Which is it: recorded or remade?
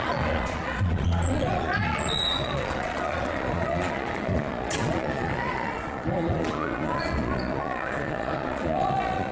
remade